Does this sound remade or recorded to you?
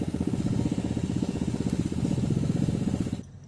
recorded